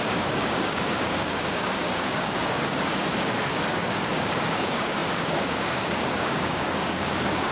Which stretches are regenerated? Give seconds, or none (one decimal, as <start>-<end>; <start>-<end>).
0.0-7.5